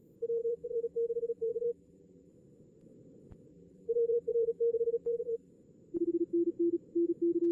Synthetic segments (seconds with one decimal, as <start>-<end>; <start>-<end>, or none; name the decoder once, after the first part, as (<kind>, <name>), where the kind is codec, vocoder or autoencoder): 0.4-2.3 (vocoder, BigVGAN v2); 3.5-5.5

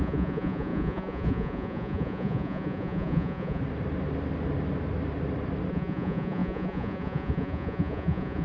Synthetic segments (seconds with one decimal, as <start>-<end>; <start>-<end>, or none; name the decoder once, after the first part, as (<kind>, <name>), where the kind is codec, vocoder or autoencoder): 0.0-3.6 (vocoder, Vocos); 5.7-8.4

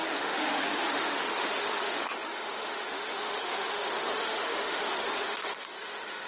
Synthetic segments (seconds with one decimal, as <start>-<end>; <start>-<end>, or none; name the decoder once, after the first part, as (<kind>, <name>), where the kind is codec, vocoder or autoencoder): 0.0-6.3 (autoencoder, DAC-VAE)

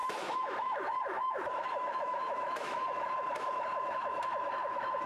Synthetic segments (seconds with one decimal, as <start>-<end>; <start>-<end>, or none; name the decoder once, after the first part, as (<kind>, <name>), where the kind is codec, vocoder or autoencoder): 0.0-5.1 (autoencoder, DAC-VAE)

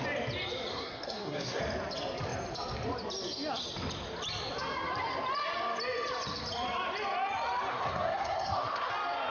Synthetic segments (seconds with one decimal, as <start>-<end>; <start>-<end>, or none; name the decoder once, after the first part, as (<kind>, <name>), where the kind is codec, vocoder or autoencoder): 0.7-1.6 (codec, SNAC); 7.7-8.9

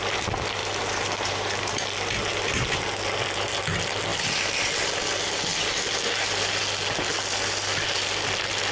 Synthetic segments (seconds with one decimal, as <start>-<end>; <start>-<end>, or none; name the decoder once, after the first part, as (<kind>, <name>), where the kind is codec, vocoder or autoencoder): 0.6-1.7 (vocoder, BigVGAN v2)

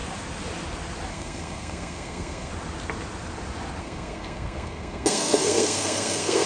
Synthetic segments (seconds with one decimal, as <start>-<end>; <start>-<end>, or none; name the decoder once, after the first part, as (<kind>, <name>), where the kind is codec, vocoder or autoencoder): 1.1-2.5 (codec, SNAC); 3.8-6.5

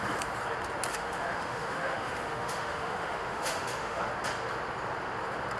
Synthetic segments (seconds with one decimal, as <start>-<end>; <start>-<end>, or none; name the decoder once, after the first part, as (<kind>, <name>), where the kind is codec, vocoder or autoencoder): 0.9-4.1 (autoencoder, DAC-VAE)